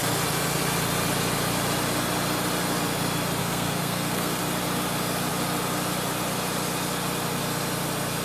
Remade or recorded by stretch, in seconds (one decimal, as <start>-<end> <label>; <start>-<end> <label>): 0.0-3.4 recorded; 3.4-4.4 remade; 4.4-8.2 recorded